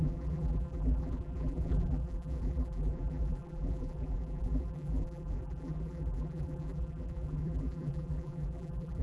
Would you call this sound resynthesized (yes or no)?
yes